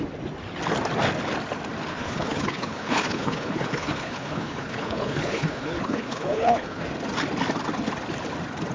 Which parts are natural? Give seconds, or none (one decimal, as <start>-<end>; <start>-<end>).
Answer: 0.0-1.9; 6.8-8.7